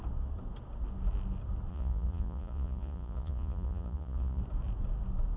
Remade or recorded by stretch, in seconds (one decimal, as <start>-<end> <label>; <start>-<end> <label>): 0.0-1.7 recorded; 1.7-4.4 remade; 4.4-5.4 recorded